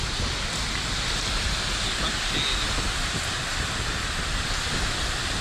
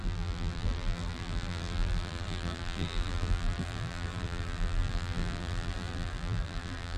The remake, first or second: second